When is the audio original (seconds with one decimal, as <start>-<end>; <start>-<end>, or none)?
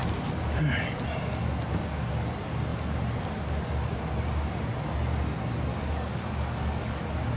0.0-5.7; 7.0-7.4